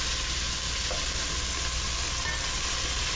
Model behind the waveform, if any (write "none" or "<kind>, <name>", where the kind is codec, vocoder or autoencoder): none